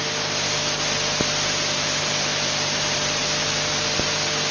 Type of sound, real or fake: real